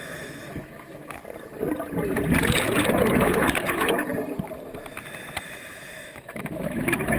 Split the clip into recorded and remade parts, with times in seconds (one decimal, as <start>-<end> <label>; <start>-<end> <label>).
0.0-1.2 remade; 1.2-3.1 recorded; 3.1-4.1 remade; 4.1-5.4 recorded; 5.4-7.2 remade